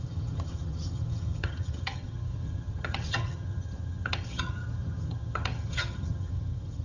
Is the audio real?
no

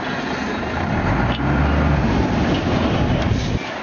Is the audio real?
yes